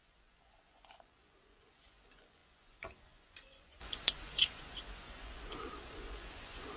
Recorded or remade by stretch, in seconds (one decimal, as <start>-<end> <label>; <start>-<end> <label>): 0.0-6.8 remade